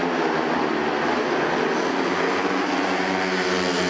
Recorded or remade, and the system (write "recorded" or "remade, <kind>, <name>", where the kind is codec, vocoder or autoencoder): recorded